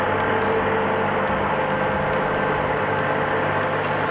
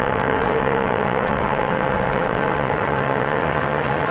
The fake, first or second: second